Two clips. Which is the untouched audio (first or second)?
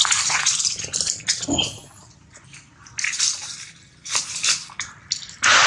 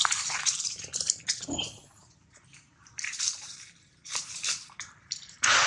first